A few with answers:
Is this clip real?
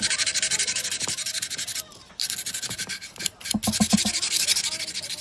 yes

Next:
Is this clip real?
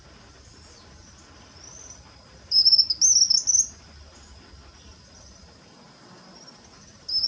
yes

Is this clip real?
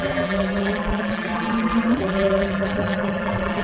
no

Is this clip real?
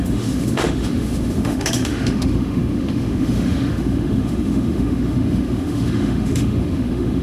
no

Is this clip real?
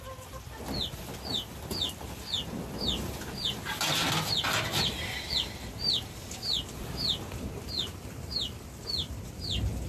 yes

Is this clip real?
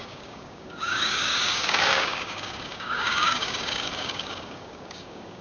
no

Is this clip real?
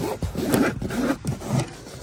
yes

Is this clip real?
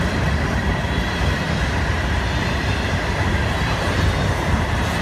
yes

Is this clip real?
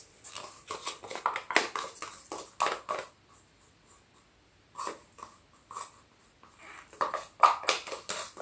yes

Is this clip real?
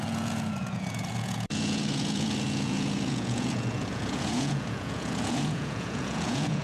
no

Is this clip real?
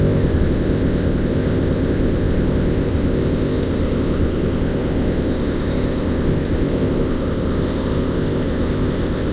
no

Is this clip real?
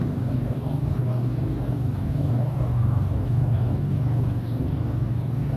no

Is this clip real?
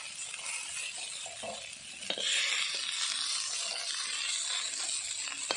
yes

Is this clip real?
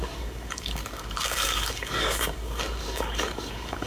no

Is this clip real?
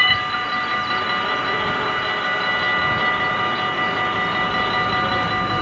yes